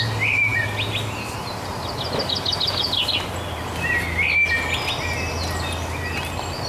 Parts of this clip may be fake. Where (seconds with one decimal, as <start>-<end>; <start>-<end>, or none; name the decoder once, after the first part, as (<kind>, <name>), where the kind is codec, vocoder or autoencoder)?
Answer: none